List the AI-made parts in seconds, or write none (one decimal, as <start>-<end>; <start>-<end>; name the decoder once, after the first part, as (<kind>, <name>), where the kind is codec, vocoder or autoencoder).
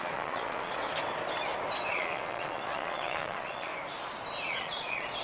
0.0-0.8 (vocoder, Vocos); 1.9-3.7; 4.5-5.2